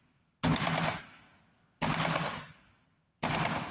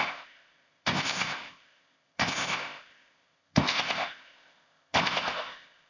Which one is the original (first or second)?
first